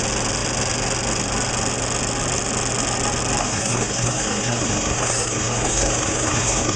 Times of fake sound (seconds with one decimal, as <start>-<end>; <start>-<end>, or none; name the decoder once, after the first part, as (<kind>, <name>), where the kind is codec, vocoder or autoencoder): 3.4-6.8 (codec, SNAC)

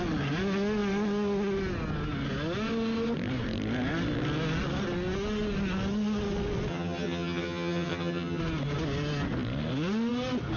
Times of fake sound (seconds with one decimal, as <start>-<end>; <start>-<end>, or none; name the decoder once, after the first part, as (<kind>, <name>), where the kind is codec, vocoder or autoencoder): 6.7-8.4 (vocoder, HiFi-GAN)

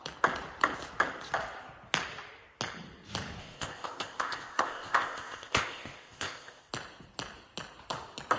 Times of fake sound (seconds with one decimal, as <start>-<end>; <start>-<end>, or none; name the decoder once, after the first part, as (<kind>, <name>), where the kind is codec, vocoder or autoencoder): 3.4-6.7 (codec, ZipCodec)

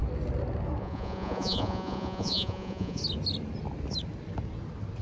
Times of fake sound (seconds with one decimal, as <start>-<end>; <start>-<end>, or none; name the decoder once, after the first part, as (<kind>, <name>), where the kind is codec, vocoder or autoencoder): 0.8-3.0 (vocoder, Vocos)

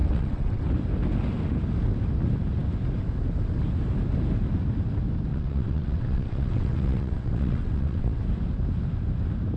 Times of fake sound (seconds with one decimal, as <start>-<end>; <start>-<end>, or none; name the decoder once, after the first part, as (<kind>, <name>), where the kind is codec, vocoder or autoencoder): 0.0-0.6 (vocoder, WaveNeXt); 5.3-8.2

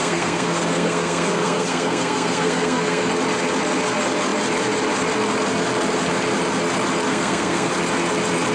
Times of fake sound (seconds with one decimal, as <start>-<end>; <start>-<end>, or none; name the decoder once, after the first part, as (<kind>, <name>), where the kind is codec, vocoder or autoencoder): 0.0-3.1 (codec, SNAC); 7.1-7.7

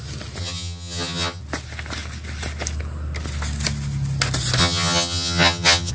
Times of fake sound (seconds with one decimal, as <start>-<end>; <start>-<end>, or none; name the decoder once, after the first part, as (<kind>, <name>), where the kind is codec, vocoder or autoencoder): 0.4-1.4 (vocoder, HiFi-GAN); 4.6-5.9